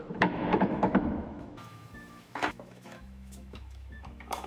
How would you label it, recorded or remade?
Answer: remade